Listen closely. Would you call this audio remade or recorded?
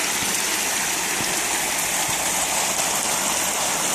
recorded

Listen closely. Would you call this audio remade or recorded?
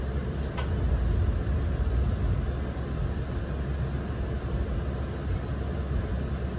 recorded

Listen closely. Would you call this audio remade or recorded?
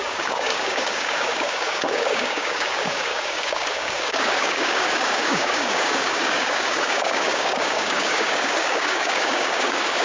remade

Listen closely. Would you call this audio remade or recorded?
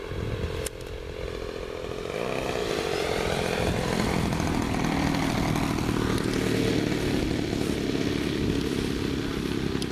recorded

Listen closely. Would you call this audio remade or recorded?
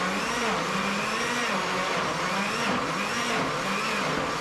recorded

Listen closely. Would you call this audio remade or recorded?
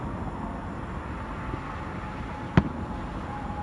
recorded